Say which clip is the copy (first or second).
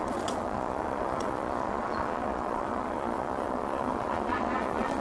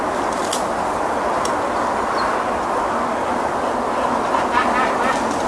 first